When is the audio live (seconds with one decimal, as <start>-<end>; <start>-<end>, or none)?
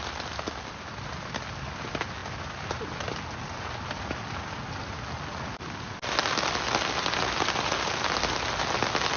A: 0.0-9.2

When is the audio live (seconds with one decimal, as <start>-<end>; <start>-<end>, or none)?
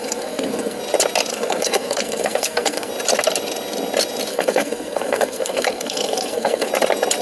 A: 0.8-1.3; 2.9-4.3; 6.7-7.2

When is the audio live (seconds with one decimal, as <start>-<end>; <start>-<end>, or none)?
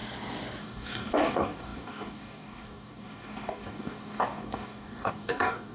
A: 0.0-0.6